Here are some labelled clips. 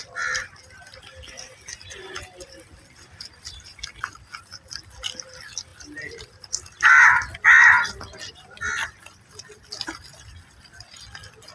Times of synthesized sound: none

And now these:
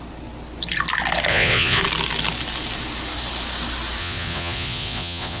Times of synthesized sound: 1.3-1.8 (vocoder, Vocos); 4.0-5.4

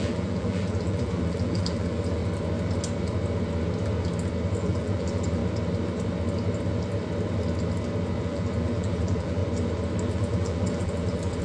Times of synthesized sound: 0.0-2.2 (vocoder, BigVGAN v2); 4.6-5.4; 8.2-9.4; 10.0-11.4

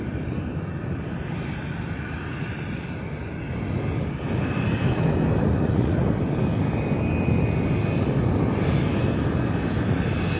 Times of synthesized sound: 5.4-6.2 (vocoder, Vocos)

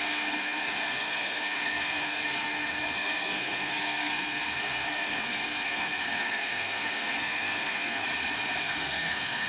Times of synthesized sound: 0.0-8.0 (codec, SNAC); 8.6-9.5

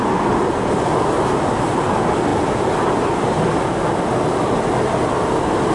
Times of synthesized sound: none

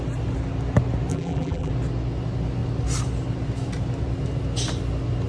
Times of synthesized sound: 1.1-1.7 (vocoder, BigVGAN v2)